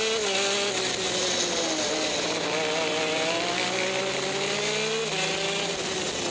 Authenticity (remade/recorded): recorded